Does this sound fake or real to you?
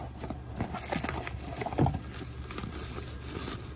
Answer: real